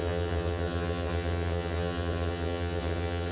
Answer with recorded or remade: remade